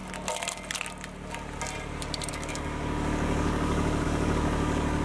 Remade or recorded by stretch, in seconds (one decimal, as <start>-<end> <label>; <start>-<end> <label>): 0.0-2.3 recorded; 2.3-5.0 remade